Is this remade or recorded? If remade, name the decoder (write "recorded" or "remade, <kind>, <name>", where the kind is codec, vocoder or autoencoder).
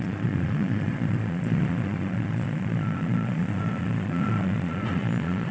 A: remade, vocoder, Vocos